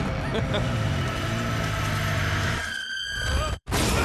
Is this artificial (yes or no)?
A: no